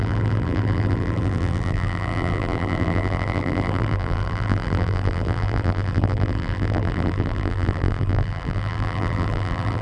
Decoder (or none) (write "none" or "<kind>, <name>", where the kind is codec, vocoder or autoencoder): vocoder, BigVGAN v2